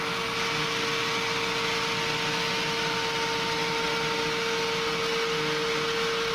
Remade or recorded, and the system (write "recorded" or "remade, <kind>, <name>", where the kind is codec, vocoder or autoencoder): recorded